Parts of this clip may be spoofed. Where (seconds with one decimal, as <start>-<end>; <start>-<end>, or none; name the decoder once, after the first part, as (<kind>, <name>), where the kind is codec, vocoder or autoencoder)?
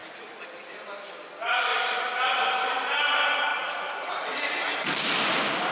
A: 0.0-1.1 (vocoder, BigVGAN v2); 1.7-3.1; 3.5-4.1